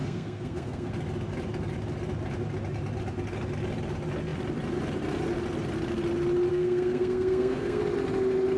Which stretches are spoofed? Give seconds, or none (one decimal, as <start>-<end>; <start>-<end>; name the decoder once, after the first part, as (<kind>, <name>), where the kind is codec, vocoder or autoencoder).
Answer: 0.0-0.9 (codec, SNAC); 6.5-7.8